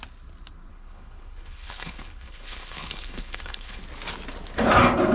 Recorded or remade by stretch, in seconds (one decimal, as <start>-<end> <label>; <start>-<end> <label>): 0.0-0.7 recorded; 0.7-3.8 remade; 3.8-5.1 recorded